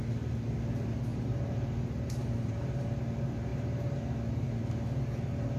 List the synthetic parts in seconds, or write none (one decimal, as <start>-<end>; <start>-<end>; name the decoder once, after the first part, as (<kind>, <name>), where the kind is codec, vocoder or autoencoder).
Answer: 1.1-2.6 (vocoder, BigVGAN v2); 3.5-4.0